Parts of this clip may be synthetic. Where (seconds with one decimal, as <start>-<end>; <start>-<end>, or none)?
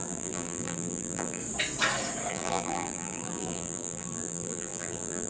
0.0-1.4; 2.3-5.3